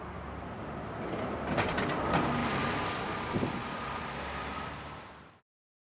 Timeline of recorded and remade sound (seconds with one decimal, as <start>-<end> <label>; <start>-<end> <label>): 0.0-2.4 recorded; 2.4-5.4 remade; 5.4-6.0 recorded